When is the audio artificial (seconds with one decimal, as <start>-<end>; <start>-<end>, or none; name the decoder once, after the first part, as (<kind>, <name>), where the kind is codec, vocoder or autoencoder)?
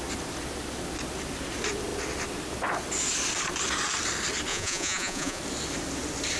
4.5-5.4 (vocoder, Vocos)